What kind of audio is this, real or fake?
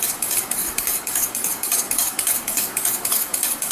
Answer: fake